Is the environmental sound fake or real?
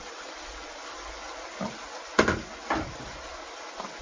real